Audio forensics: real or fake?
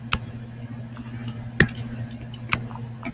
real